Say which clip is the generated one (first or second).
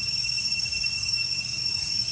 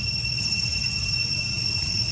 first